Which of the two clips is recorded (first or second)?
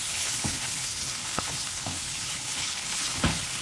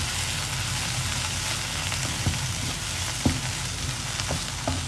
second